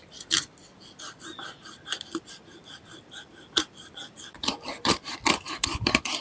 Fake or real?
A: fake